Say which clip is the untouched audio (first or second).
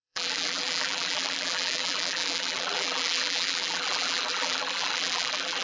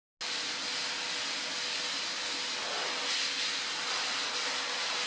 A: second